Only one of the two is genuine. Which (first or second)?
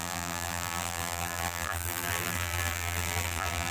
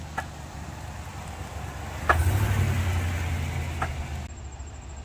second